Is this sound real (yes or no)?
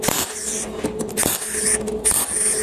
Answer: yes